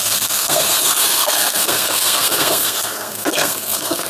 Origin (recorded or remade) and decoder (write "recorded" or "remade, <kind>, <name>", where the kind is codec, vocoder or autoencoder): remade, codec, SNAC